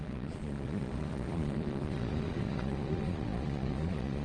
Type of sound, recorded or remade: remade